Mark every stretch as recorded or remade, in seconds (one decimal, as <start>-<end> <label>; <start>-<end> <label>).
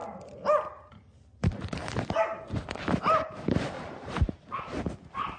0.0-1.4 recorded; 1.4-4.6 remade; 4.6-5.4 recorded